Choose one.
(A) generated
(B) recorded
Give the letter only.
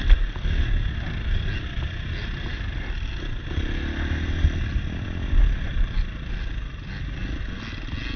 B